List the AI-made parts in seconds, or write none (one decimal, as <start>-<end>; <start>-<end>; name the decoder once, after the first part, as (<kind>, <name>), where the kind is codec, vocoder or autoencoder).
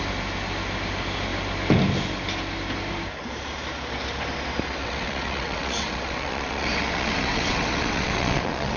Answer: 4.8-8.8 (vocoder, WaveNeXt)